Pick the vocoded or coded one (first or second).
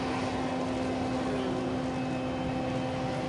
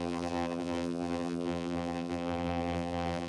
second